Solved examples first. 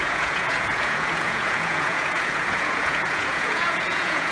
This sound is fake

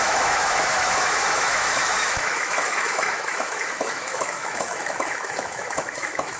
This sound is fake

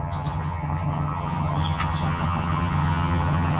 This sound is fake